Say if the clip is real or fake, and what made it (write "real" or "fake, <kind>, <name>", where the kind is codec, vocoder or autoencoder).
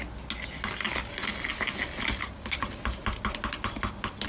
real